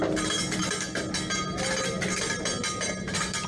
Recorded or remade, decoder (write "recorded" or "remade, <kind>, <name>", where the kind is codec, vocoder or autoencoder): recorded